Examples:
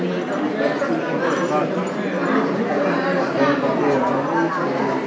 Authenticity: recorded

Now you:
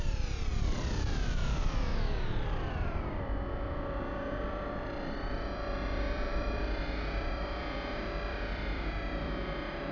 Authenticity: remade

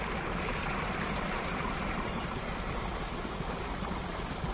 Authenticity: recorded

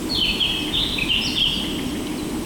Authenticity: recorded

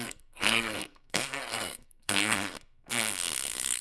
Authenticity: remade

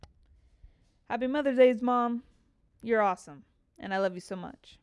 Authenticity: recorded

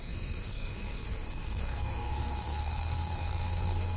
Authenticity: remade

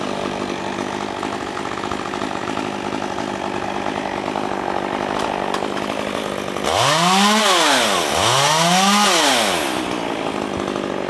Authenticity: recorded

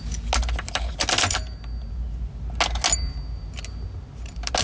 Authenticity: recorded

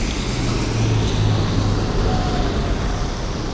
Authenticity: recorded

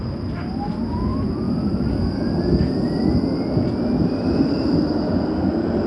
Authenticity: recorded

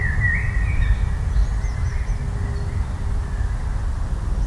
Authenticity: recorded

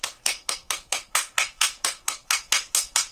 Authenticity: remade